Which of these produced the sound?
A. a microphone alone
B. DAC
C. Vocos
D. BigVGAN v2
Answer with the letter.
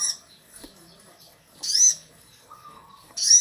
B